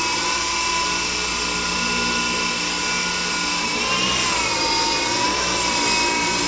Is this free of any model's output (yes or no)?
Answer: yes